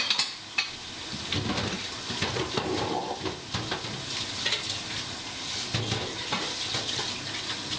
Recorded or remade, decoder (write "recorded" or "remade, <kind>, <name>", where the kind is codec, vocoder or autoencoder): recorded